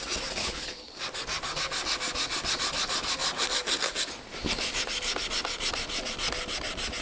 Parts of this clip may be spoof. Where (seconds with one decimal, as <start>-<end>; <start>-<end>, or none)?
0.4-1.0